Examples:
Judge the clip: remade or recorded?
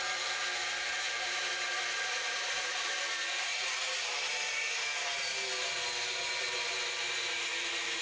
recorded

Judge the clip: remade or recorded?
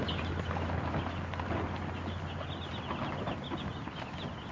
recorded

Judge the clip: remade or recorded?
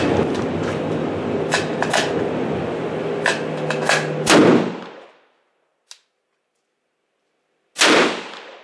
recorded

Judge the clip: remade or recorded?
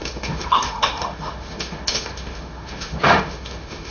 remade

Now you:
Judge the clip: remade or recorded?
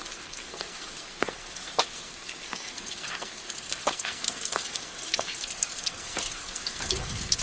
remade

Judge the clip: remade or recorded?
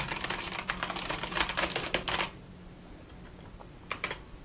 recorded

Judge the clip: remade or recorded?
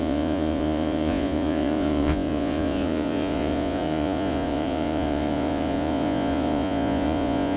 remade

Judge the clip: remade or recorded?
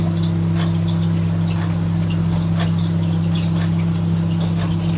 recorded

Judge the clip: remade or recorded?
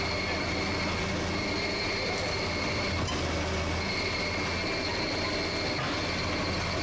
recorded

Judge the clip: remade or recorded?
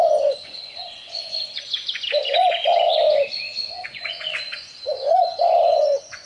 remade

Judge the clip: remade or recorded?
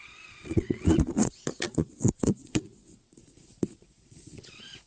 remade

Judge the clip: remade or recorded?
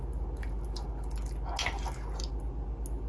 recorded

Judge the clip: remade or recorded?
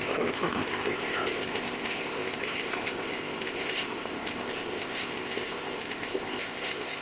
remade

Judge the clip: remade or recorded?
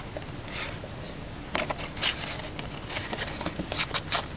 recorded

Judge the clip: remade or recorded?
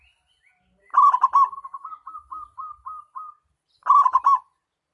recorded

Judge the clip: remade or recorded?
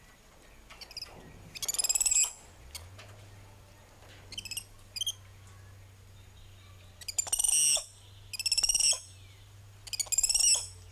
recorded